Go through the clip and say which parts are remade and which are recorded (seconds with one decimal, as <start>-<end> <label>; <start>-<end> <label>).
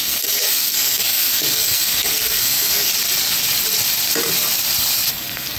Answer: 0.0-2.9 remade; 2.9-5.1 recorded; 5.1-5.6 remade